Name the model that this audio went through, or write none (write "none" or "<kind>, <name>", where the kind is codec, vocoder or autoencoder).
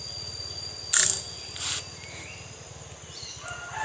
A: none